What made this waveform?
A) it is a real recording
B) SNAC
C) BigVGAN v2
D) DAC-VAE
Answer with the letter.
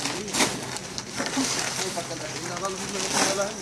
A